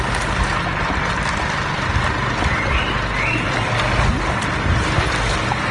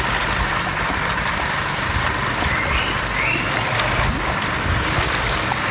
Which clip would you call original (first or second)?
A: first